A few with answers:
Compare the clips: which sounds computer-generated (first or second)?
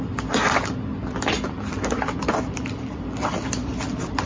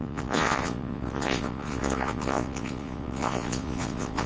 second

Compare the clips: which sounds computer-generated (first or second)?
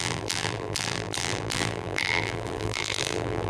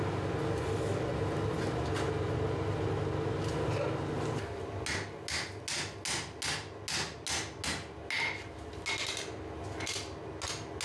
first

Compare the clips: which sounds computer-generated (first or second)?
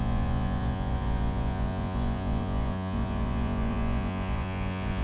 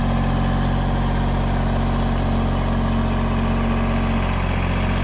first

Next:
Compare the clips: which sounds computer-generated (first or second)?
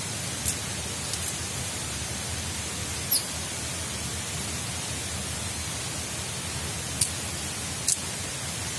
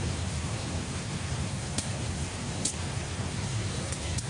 second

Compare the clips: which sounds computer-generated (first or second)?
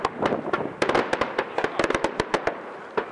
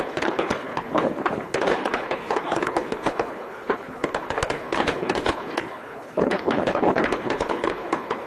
second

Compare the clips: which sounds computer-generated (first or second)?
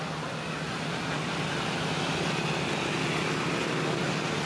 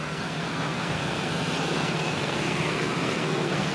second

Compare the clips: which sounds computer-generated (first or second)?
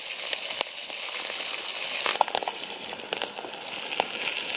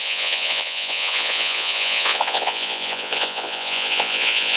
second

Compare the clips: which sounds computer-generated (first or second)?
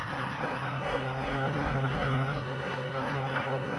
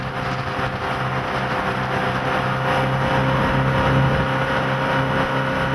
first